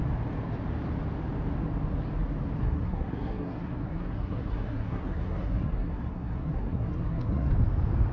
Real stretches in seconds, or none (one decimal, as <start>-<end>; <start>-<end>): 0.0-2.6; 7.5-8.1